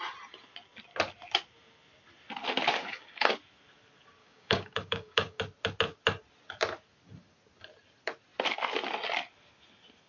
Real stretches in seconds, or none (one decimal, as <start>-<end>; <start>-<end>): 0.0-2.8; 3.3-4.2; 5.4-10.1